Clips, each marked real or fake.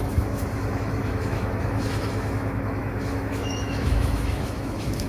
fake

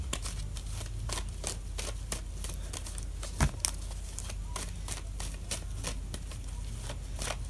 real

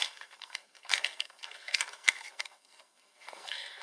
fake